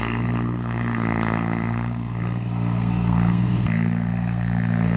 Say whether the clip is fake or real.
fake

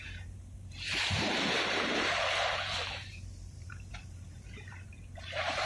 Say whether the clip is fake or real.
fake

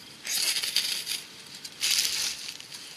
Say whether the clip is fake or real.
real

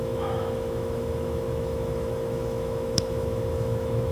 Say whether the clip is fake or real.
fake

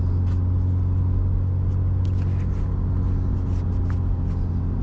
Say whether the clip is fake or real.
real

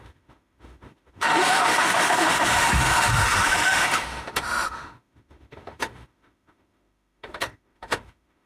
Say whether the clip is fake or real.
fake